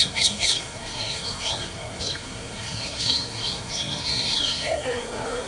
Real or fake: fake